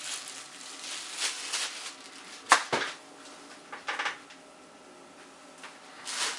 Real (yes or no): yes